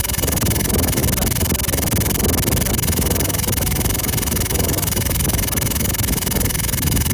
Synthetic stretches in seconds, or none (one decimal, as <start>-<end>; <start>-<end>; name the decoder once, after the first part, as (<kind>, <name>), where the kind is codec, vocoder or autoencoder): 0.0-1.0 (autoencoder, DAC-VAE); 2.7-7.1